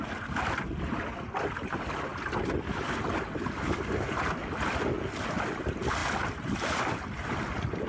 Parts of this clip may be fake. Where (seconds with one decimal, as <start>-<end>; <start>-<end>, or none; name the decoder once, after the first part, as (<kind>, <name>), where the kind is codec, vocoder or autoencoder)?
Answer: none